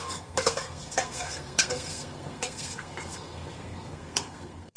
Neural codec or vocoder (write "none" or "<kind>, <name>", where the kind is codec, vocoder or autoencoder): codec, SNAC